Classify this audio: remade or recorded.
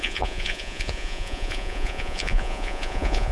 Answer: remade